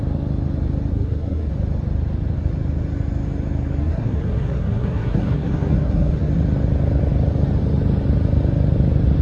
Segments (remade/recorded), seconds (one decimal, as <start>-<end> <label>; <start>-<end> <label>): 0.0-0.9 recorded; 0.9-1.5 remade; 1.5-3.8 recorded; 3.8-6.3 remade; 6.3-9.2 recorded